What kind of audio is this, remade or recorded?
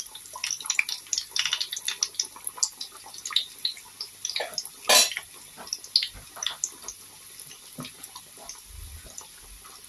recorded